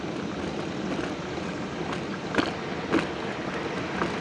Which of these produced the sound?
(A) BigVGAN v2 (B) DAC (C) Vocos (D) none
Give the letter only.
D